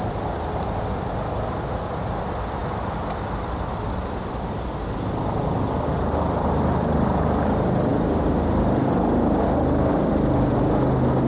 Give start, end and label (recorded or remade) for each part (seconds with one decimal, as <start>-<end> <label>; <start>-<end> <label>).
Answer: 0.0-11.3 recorded